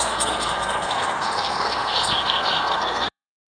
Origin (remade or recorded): remade